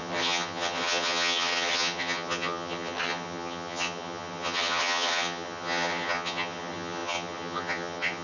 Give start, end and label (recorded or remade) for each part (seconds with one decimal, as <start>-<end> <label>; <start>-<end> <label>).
0.0-8.2 remade